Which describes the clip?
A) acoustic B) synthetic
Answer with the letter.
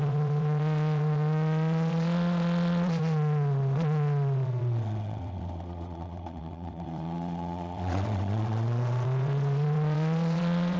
B